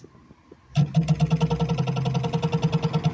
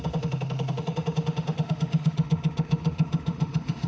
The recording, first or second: first